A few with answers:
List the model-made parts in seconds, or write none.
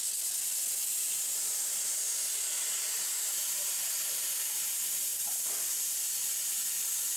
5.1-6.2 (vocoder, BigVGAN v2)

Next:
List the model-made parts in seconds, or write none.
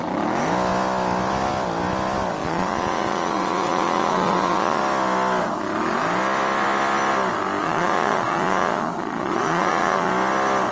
2.4-4.8 (vocoder, Vocos); 7.6-10.1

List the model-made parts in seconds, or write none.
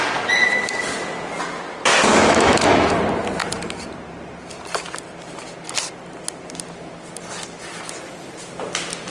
2.1-2.9 (autoencoder, DAC-VAE)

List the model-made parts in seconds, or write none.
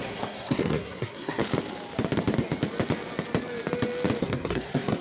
0.0-1.4 (codec, SNAC); 4.2-5.0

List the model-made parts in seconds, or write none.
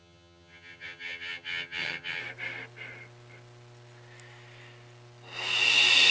0.0-2.2 (vocoder, HiFi-GAN)